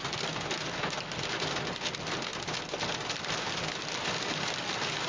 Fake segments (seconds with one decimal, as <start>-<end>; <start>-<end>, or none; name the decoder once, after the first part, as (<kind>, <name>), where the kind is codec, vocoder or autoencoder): none